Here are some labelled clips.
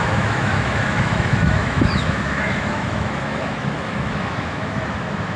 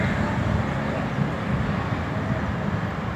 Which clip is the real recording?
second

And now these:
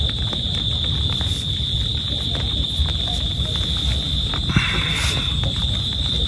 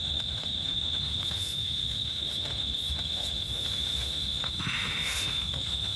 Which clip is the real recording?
first